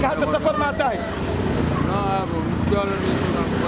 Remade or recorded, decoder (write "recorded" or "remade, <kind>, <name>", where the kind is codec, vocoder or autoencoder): recorded